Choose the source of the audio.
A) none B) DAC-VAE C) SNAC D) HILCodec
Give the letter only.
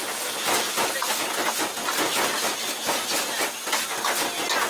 A